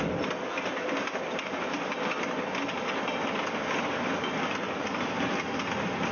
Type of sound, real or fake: real